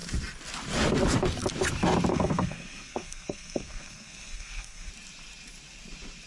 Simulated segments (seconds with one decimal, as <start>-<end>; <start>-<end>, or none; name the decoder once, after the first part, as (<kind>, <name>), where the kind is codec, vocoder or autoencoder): 2.1-4.9 (codec, SNAC)